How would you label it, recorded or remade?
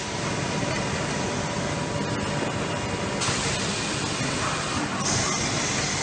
recorded